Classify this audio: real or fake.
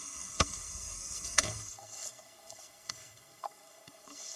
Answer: fake